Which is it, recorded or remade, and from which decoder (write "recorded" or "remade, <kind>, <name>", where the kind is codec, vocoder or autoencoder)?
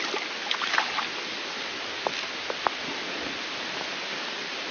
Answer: recorded